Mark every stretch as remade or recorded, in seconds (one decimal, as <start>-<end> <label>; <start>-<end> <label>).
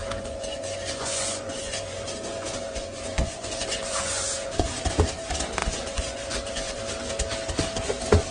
0.0-4.8 remade; 4.8-5.6 recorded; 5.6-6.8 remade; 6.8-8.3 recorded